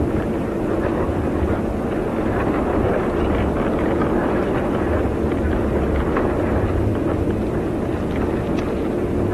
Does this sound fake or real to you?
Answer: real